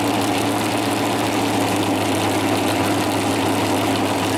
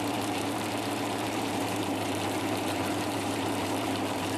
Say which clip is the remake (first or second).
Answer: second